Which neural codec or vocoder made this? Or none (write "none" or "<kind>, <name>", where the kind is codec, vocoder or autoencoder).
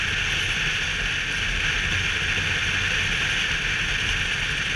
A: none